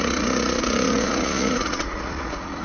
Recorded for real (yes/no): no